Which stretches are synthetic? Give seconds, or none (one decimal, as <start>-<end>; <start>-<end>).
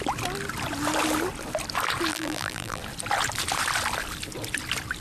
2.1-2.8